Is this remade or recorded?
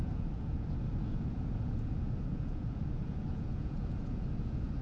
remade